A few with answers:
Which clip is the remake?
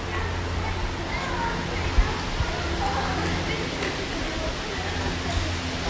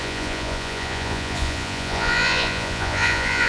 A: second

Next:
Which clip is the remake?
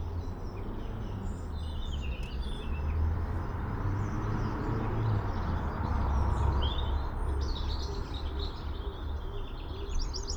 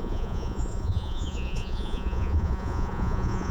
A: second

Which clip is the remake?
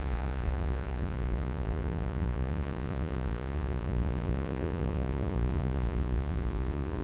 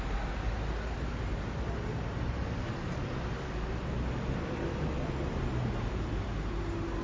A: first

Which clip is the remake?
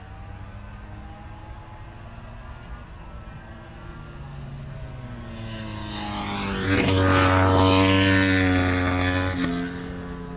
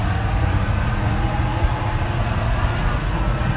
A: second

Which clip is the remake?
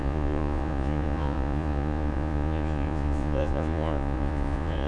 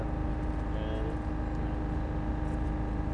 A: first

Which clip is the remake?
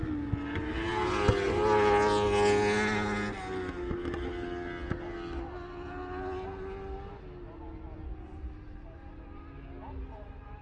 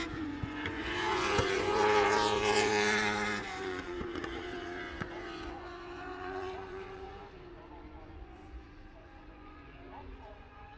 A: second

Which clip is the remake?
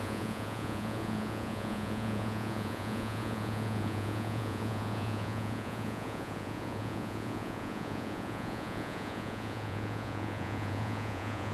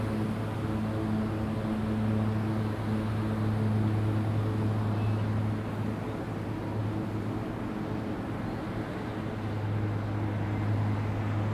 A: first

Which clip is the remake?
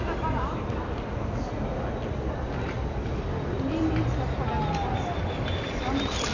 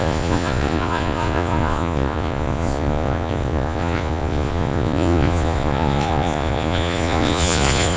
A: second